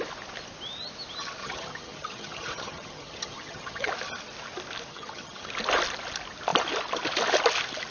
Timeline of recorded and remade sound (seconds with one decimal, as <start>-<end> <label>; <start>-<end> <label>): 0.0-1.4 recorded; 1.4-3.9 remade; 3.9-4.9 recorded; 4.9-5.5 remade; 5.5-7.9 recorded